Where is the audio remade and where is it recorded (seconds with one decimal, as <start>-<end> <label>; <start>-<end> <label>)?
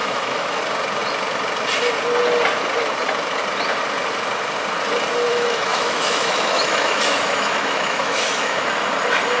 0.0-0.6 remade; 0.6-5.3 recorded; 5.3-8.7 remade; 8.7-9.4 recorded